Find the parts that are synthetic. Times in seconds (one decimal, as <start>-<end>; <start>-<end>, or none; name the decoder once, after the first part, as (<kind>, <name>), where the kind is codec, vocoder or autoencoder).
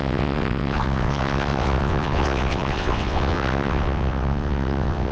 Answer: 0.0-5.1 (vocoder, WaveNeXt)